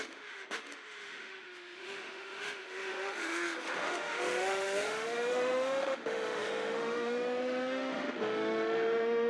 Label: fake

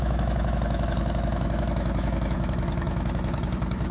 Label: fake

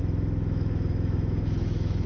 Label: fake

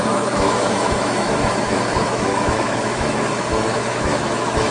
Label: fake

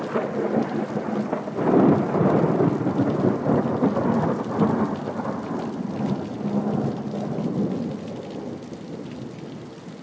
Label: real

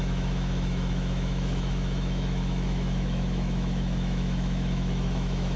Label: fake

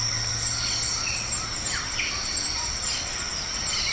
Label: real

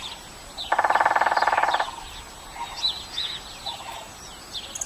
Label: real